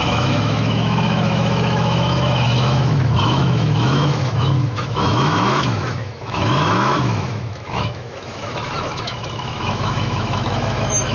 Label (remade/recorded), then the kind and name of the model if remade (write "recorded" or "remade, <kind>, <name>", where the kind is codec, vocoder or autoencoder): remade, autoencoder, DAC-VAE